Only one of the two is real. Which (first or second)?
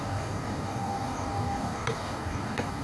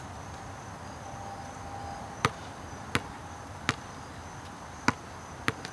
second